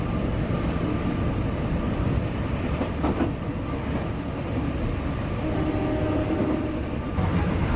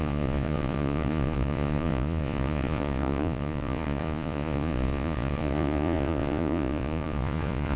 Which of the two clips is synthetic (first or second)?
second